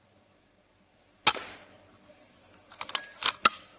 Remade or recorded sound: recorded